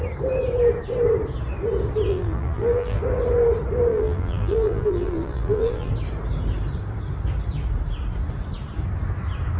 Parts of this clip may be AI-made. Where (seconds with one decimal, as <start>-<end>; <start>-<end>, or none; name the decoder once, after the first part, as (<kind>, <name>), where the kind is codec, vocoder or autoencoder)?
2.1-3.0 (vocoder, BigVGAN v2); 3.9-5.9